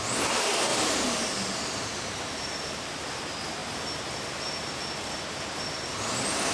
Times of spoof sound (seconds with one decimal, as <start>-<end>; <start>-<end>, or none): 0.7-2.9